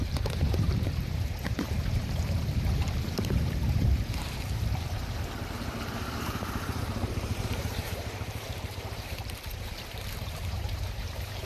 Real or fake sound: fake